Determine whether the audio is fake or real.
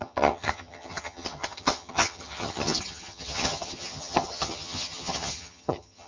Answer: fake